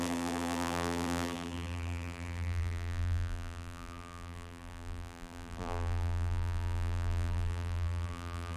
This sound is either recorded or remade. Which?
remade